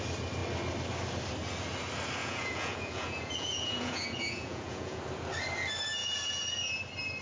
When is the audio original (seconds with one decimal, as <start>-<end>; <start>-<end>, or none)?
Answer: 0.0-2.2; 5.0-6.0; 6.7-7.2